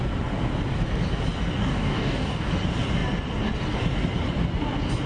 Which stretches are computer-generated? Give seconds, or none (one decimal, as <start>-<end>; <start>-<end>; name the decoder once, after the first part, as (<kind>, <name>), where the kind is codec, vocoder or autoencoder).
1.6-2.5 (codec, DAC)